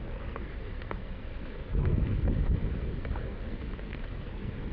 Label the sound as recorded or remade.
remade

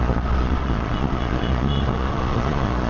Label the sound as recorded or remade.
remade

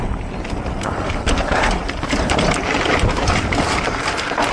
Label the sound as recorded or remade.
recorded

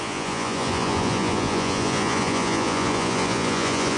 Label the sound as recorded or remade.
remade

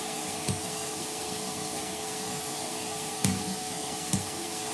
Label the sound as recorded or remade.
remade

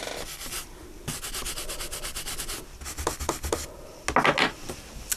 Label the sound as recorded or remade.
recorded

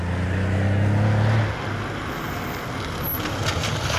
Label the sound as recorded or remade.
recorded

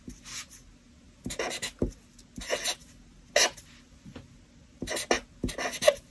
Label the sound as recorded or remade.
recorded